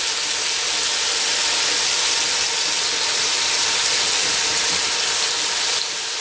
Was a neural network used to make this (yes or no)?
no